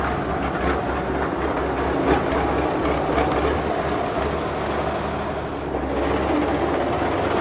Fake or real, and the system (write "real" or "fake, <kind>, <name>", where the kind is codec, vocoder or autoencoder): real